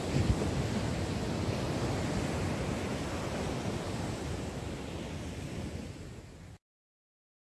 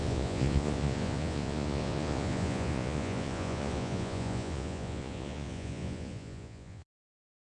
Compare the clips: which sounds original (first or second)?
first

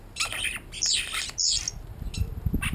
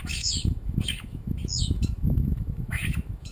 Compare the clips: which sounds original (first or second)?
first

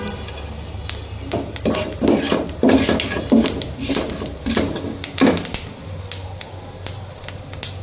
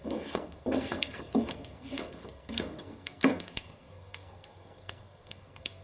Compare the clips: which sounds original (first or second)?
first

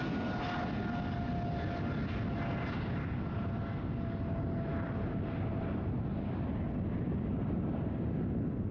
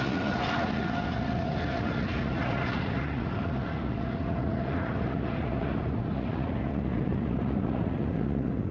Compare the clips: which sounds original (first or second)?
first